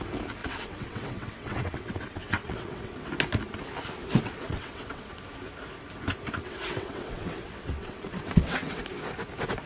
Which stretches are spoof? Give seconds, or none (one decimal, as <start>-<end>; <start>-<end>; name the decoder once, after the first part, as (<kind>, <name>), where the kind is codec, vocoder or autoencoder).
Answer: 0.4-3.1 (vocoder, WaveNeXt); 4.0-5.1; 6.4-8.8